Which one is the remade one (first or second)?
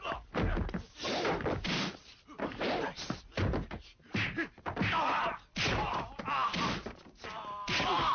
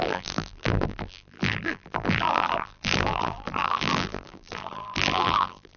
second